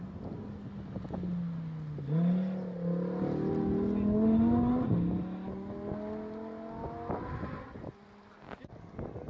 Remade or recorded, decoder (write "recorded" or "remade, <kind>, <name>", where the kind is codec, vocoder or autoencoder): recorded